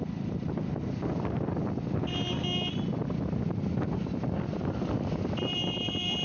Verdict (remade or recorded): recorded